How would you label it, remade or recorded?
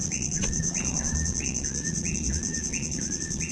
remade